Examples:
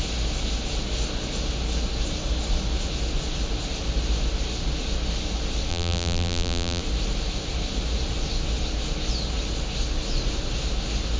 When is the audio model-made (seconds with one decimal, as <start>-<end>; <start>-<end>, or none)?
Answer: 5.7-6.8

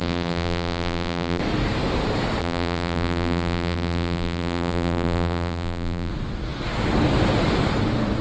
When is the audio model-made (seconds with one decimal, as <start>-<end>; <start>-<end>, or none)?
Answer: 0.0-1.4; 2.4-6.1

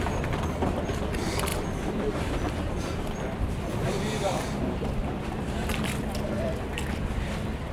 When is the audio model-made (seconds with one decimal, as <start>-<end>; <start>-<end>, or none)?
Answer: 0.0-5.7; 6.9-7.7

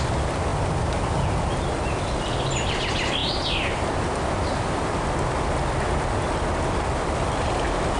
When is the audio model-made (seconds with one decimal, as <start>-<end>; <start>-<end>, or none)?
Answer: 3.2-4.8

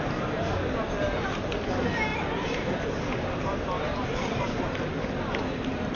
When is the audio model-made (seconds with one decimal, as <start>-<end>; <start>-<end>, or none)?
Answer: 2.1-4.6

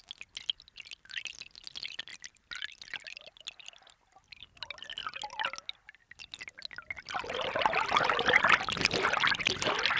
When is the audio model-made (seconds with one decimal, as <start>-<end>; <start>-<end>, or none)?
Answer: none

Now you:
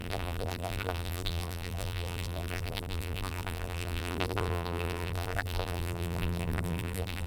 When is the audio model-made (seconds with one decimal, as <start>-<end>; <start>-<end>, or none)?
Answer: 0.0-7.3